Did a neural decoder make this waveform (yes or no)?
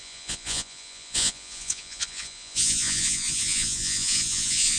yes